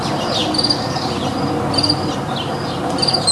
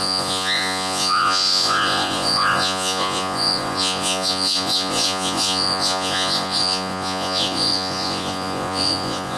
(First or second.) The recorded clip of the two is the first